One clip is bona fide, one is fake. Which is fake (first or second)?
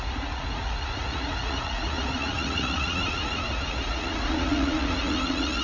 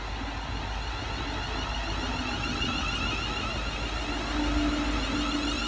first